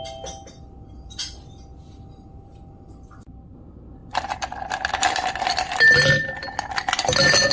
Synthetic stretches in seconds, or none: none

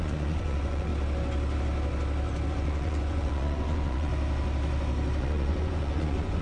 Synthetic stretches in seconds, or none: 0.0-0.9 (vocoder, Vocos); 2.5-4.1; 5.2-6.4